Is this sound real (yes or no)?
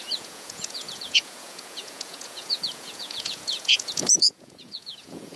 no